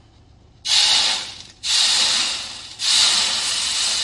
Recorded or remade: recorded